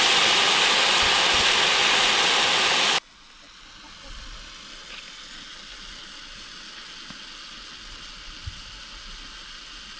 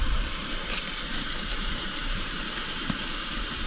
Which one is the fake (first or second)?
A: second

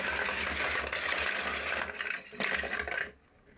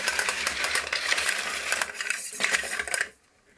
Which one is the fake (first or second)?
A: second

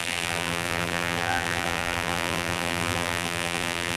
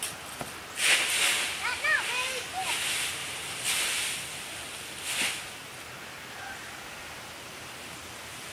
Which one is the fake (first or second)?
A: first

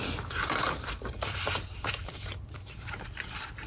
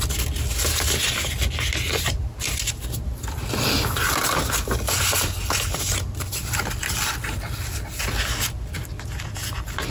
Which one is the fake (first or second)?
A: first